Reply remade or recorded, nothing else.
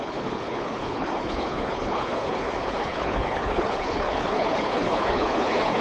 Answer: remade